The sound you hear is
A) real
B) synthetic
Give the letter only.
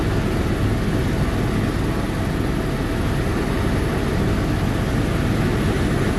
A